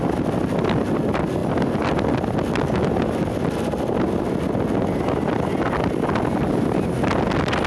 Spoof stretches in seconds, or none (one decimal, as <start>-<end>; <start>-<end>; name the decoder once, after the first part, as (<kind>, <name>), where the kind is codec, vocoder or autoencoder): none